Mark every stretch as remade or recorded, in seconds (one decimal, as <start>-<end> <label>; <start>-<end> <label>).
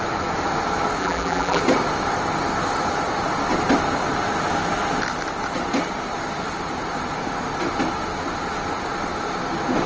0.0-1.0 recorded; 1.0-1.6 remade; 1.6-9.9 recorded